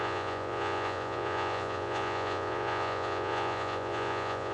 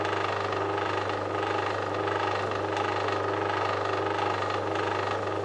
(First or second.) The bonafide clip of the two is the second